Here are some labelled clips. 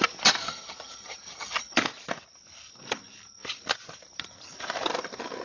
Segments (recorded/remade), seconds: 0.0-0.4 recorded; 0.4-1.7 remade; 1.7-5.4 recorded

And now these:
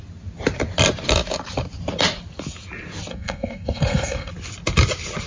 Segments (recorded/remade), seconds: 0.0-3.1 recorded; 3.1-4.3 remade; 4.3-5.3 recorded

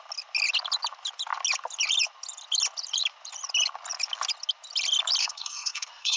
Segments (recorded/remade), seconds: 0.0-5.2 recorded; 5.2-6.2 remade

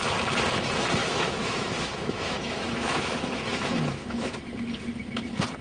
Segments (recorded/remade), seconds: 0.0-1.0 recorded; 1.0-4.4 remade; 4.4-5.6 recorded

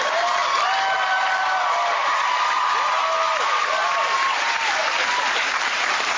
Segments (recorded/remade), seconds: 0.0-0.4 remade; 0.4-3.4 recorded; 3.4-4.8 remade; 4.8-5.5 recorded; 5.5-6.2 remade

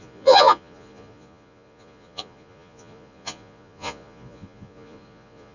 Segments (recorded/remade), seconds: 0.0-5.5 remade

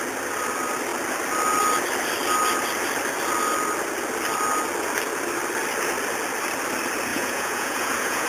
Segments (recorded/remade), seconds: 0.0-7.1 recorded; 7.1-8.3 remade

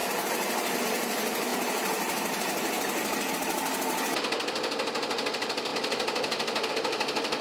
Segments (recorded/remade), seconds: 0.0-7.4 recorded